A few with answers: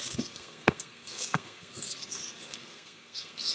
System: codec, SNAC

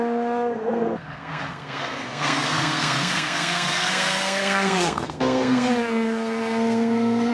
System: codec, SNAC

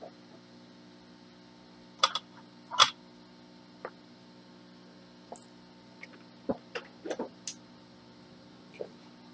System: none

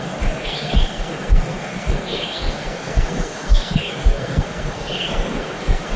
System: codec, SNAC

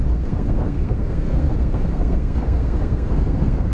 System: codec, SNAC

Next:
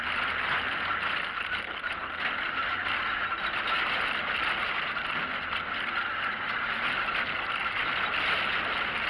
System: none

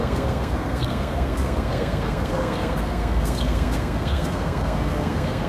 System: codec, SNAC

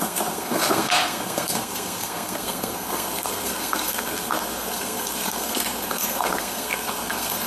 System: codec, SNAC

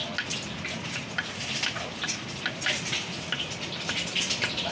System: none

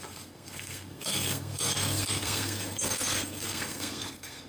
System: codec, SNAC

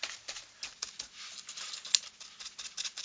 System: none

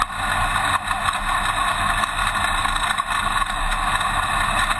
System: none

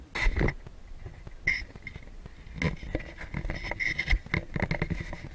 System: none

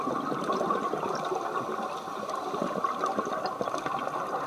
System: none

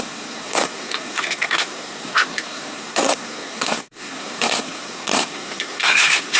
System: codec, SNAC